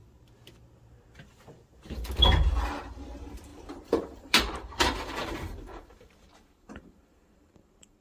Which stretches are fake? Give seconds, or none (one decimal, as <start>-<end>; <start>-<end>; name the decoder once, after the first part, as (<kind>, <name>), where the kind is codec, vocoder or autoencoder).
2.7-8.0 (vocoder, BigVGAN v2)